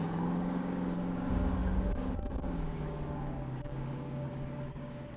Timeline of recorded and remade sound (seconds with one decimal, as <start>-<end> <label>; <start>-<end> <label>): 0.0-5.2 remade